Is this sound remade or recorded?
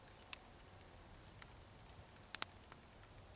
recorded